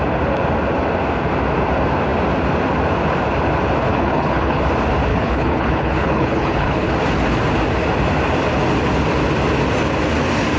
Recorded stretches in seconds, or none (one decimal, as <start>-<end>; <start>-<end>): 0.0-3.9; 4.6-5.1; 6.9-10.6